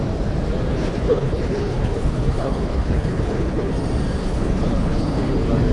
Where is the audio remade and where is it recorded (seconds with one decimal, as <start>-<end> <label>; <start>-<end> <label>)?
0.0-0.7 recorded; 0.7-3.7 remade; 3.7-4.2 recorded; 4.2-5.3 remade; 5.3-5.7 recorded